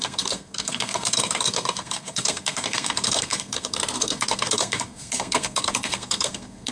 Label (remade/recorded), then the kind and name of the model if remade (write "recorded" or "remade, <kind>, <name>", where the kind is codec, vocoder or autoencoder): remade, codec, SNAC